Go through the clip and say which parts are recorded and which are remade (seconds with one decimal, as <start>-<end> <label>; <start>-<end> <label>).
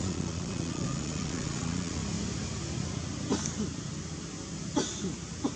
0.0-2.0 remade; 2.0-5.6 recorded